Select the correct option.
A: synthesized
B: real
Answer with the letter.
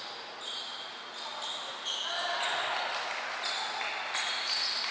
B